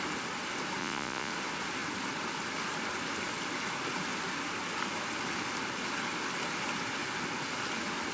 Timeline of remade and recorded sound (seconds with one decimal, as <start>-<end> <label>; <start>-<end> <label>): 0.0-0.8 recorded; 0.8-1.3 remade; 1.3-8.1 recorded